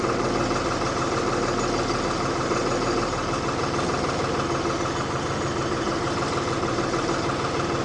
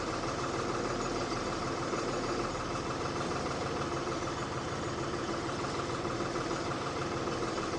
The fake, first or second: second